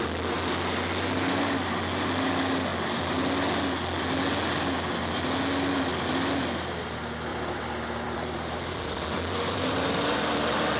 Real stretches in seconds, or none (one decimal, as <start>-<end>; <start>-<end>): 0.0-7.3